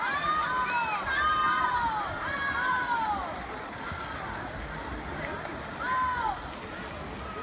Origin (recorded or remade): recorded